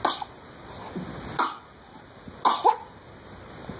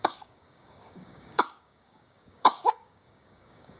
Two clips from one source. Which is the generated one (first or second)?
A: second